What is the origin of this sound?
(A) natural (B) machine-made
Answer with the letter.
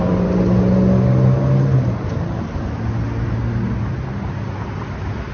A